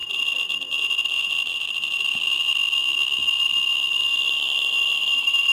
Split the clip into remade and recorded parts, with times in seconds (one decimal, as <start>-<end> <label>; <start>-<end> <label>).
0.0-3.3 recorded; 3.3-5.5 remade